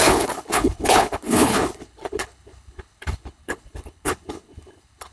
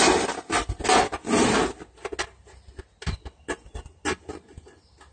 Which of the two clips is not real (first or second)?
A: first